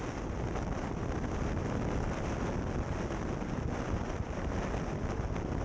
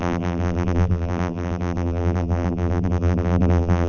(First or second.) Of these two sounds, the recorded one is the first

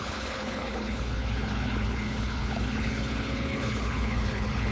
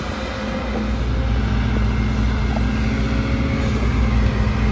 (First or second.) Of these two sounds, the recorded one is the second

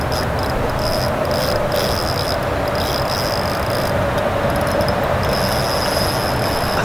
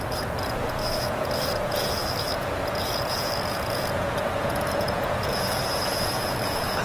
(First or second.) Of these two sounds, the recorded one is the first